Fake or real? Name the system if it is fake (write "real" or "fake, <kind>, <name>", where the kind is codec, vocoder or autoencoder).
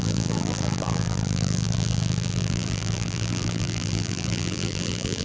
fake, vocoder, BigVGAN v2